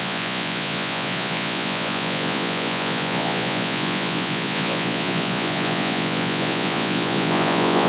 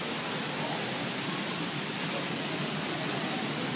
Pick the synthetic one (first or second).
first